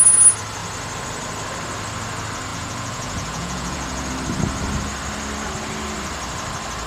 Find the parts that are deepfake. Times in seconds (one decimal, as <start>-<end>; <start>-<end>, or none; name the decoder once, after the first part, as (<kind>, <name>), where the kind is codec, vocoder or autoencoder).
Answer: 2.5-4.1 (vocoder, Vocos)